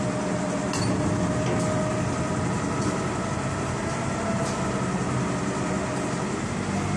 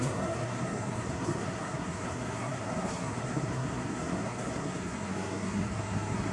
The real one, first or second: first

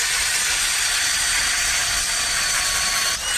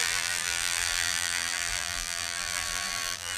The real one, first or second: first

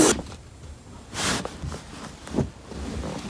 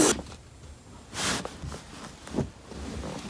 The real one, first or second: second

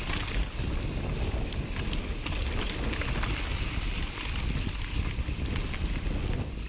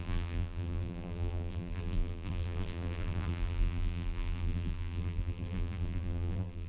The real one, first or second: first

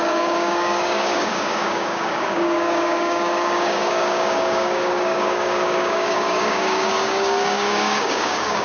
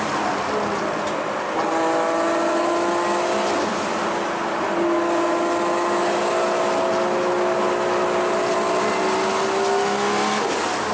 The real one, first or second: second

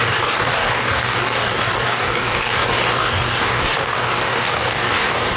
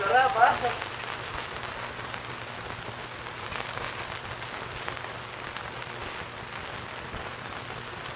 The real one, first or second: second